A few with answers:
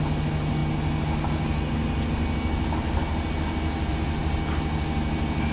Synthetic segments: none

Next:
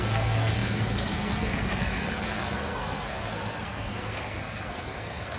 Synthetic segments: 0.0-5.4 (codec, SNAC)

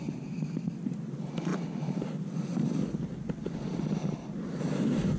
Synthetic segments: none

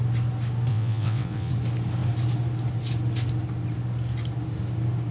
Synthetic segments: 0.7-1.5 (vocoder, WaveNeXt)

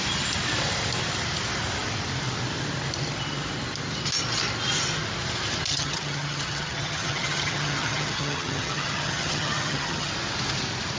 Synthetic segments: 5.7-10.1 (vocoder, HiFi-GAN)

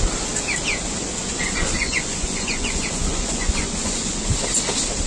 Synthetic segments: 1.2-4.3 (vocoder, Vocos)

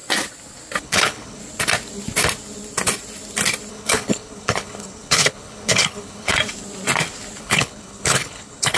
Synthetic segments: 0.8-1.4 (codec, HILCodec); 3.7-6.3; 7.4-8.8